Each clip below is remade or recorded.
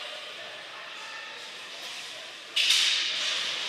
recorded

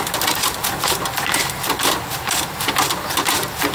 recorded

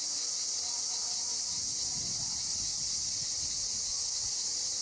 recorded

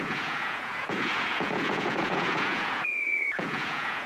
remade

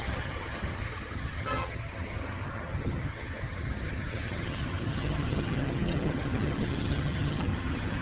remade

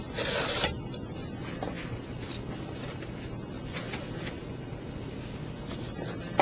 recorded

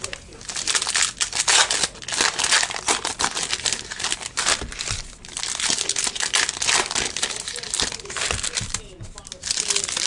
recorded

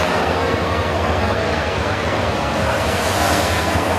remade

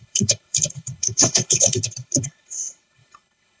remade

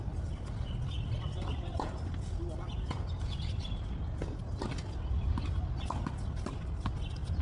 recorded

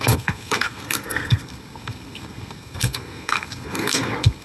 remade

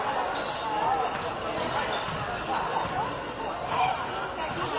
recorded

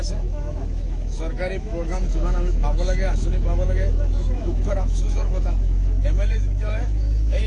remade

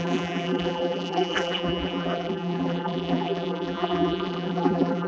remade